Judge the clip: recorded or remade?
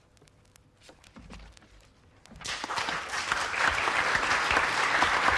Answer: recorded